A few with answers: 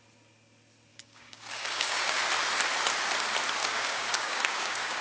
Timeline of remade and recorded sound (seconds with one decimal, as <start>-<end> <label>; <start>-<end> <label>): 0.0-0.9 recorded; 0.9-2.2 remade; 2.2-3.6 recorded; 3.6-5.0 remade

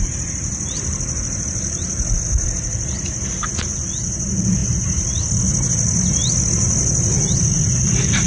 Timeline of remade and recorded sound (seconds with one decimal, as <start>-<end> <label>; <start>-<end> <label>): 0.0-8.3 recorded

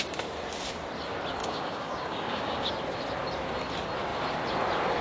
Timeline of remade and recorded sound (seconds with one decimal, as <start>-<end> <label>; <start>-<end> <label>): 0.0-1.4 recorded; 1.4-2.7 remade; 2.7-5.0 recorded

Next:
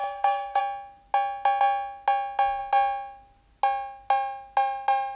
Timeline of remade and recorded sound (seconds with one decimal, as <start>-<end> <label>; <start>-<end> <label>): 0.0-0.6 remade; 0.6-5.2 recorded

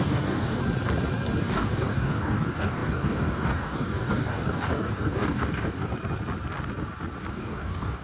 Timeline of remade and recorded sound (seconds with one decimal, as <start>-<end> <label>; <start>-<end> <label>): 0.0-0.6 remade; 0.6-1.4 recorded; 1.4-5.9 remade; 5.9-7.3 recorded; 7.3-8.0 remade

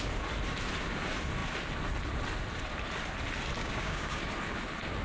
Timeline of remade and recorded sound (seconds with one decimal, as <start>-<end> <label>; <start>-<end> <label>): 0.0-3.6 recorded; 3.6-4.2 remade; 4.2-5.0 recorded

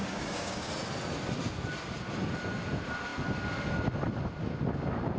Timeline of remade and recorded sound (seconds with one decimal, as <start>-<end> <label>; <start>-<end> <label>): 0.0-0.7 remade; 0.7-5.2 recorded